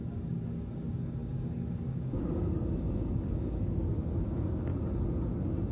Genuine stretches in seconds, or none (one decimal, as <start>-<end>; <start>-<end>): 4.7-5.7